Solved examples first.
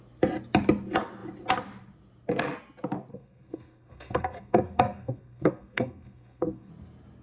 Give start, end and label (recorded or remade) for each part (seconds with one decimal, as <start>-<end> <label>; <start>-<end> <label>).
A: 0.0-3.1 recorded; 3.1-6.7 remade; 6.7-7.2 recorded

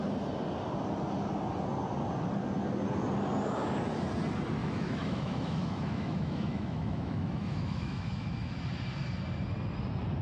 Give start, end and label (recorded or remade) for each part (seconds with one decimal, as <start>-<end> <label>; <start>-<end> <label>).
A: 0.0-4.6 recorded; 4.6-8.6 remade; 8.6-10.2 recorded

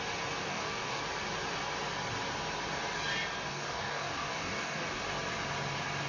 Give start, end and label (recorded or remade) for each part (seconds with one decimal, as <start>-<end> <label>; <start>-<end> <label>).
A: 0.0-0.4 recorded; 0.4-1.0 remade; 1.0-3.5 recorded; 3.5-5.0 remade; 5.0-6.1 recorded